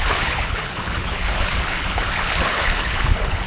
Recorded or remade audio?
remade